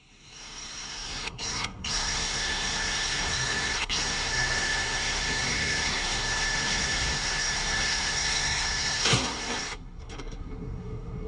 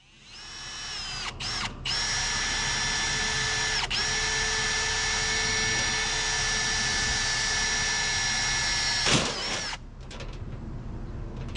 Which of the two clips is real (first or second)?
second